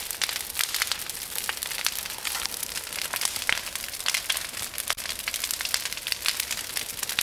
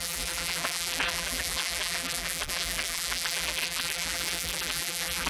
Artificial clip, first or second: second